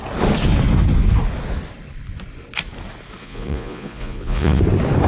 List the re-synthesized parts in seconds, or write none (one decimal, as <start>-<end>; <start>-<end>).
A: 3.2-4.6